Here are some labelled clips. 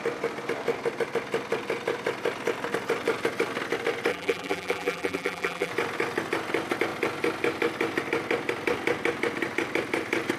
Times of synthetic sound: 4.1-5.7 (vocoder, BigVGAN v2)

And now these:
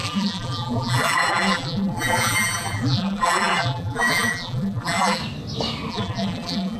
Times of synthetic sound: 0.0-5.2 (vocoder, BigVGAN v2); 5.9-6.8

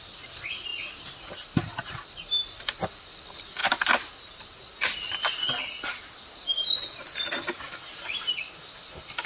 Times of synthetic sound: 0.0-0.7 (vocoder, BigVGAN v2); 1.2-3.6; 7.0-9.3

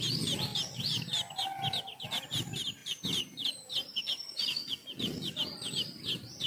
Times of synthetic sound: 0.5-1.1 (vocoder, BigVGAN v2); 2.8-3.5